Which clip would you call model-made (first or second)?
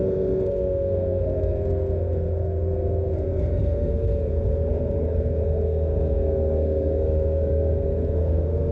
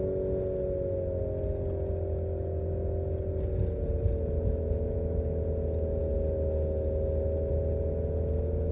first